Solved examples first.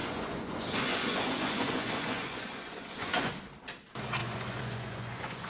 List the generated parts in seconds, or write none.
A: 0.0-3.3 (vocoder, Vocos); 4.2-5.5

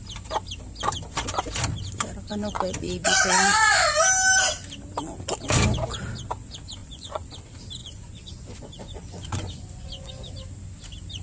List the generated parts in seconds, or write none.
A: 2.3-4.0 (vocoder, Vocos); 6.8-7.3; 7.8-10.1